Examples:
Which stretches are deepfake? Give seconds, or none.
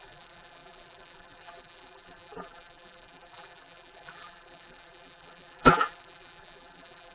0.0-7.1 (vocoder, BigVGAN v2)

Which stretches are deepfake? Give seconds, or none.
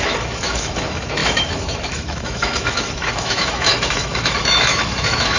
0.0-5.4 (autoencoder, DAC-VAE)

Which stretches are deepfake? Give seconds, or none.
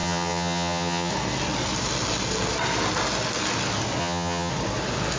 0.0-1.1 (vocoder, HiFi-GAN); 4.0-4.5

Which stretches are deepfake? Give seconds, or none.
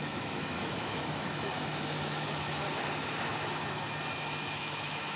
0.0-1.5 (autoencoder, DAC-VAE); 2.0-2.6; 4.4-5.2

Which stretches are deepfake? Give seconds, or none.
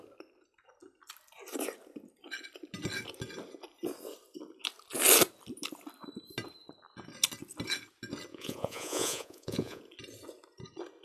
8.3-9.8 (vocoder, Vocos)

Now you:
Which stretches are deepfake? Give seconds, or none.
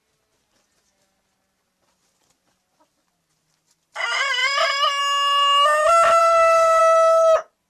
6.2-6.8 (codec, DAC)